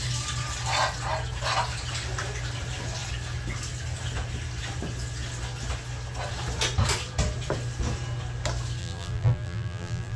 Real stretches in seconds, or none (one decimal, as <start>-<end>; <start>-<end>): 0.0-8.8